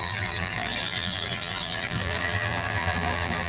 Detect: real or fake fake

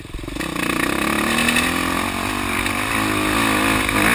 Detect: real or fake real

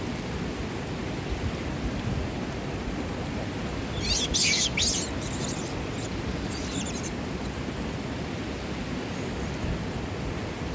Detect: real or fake real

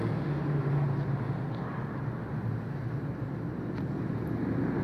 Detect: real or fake real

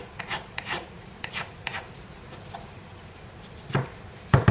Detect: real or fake fake